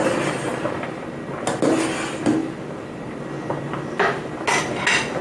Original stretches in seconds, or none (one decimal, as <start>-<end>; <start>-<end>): 0.0-0.5; 1.3-2.4; 3.6-5.2